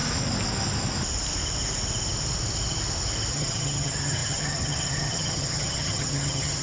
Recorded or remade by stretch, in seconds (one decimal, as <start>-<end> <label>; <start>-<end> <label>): 0.0-3.3 recorded; 3.3-6.6 remade